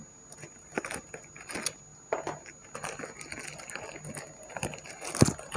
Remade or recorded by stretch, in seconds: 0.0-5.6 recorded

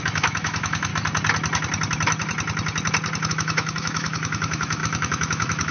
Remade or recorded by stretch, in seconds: 0.0-0.9 remade; 0.9-3.3 recorded; 3.3-5.7 remade

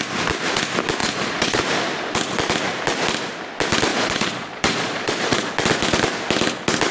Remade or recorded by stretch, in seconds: 0.0-1.0 recorded; 1.0-1.6 remade; 1.6-3.9 recorded; 3.9-5.5 remade; 5.5-6.9 recorded

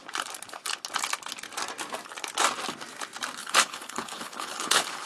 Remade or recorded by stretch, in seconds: 0.0-3.4 recorded; 3.4-5.1 remade

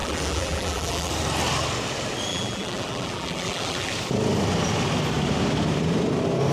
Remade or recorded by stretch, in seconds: 0.0-1.1 remade; 1.1-2.3 recorded; 2.3-3.9 remade; 3.9-6.5 recorded

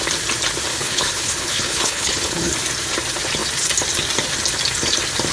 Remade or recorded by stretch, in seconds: 0.0-0.7 recorded; 0.7-2.5 remade; 2.5-5.3 recorded

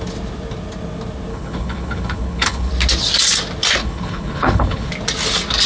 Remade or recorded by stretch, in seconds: 0.0-1.3 recorded; 1.3-2.7 remade; 2.7-3.8 recorded; 3.8-4.9 remade; 4.9-5.7 recorded